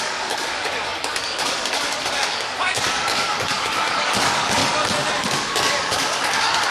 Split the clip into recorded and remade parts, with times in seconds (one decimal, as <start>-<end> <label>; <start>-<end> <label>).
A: 0.0-4.6 remade; 4.6-5.4 recorded; 5.4-6.7 remade